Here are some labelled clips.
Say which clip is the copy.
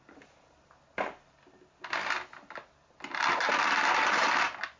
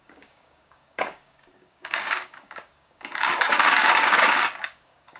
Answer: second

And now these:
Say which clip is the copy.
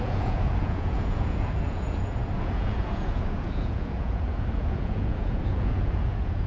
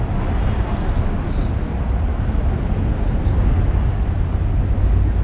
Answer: first